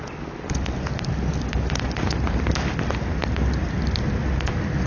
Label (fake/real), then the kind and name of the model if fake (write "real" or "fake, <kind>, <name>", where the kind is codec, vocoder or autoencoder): real